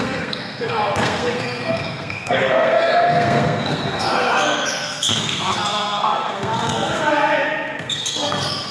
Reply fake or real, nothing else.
fake